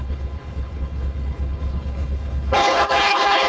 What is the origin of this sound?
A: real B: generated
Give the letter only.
B